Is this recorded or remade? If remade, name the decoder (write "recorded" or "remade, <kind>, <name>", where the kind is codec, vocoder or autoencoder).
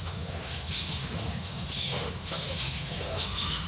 remade, autoencoder, DAC-VAE